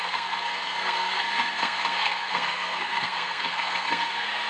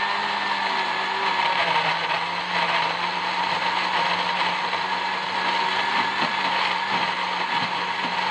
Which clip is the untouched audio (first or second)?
second